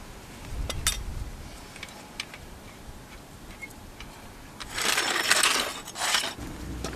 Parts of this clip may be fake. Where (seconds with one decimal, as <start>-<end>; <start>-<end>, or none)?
none

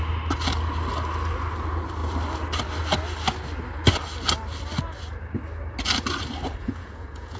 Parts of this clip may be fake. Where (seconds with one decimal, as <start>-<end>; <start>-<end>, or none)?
6.6-7.4

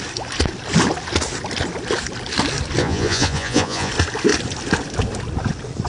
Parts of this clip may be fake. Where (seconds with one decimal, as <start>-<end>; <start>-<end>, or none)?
2.8-3.9

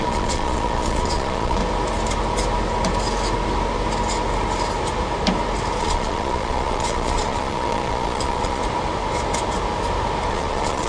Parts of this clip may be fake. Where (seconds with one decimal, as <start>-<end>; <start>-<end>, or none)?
0.0-1.6; 5.8-8.6; 10.3-10.9

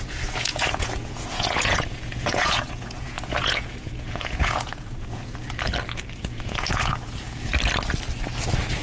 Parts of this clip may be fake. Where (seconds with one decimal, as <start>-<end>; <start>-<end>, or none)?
0.0-5.3; 6.2-7.5

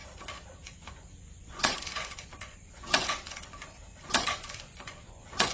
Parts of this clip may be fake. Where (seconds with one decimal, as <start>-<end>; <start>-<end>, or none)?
0.5-5.5

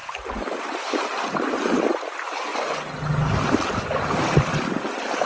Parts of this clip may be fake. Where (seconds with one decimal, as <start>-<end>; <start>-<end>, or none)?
none